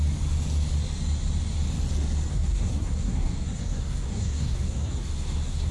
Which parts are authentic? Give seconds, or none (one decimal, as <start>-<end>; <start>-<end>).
0.0-2.3